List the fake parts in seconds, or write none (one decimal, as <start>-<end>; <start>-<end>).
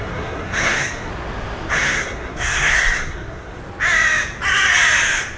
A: 0.0-1.1; 1.7-3.6